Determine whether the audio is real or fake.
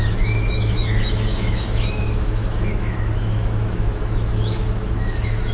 fake